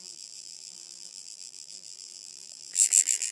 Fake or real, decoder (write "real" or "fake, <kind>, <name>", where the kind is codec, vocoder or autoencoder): fake, vocoder, BigVGAN v2